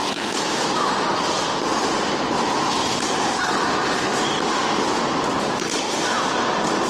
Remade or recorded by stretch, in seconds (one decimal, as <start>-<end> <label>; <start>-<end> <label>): 0.0-0.8 remade; 0.8-6.9 recorded